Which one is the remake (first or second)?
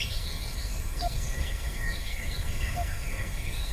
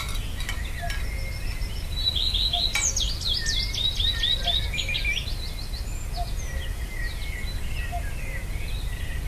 first